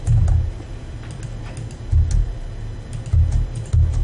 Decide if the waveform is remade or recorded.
recorded